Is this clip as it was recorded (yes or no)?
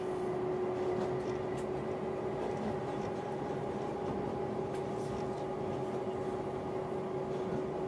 yes